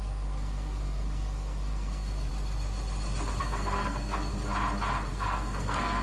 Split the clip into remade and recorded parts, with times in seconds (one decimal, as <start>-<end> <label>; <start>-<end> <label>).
0.0-2.3 remade; 2.3-3.4 recorded; 3.4-4.3 remade; 4.3-5.1 recorded; 5.1-6.0 remade